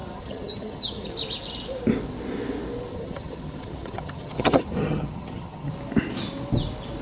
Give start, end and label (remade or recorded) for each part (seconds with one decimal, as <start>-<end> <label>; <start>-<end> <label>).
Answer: 0.0-1.1 remade; 1.1-2.9 recorded; 2.9-5.7 remade; 5.7-7.0 recorded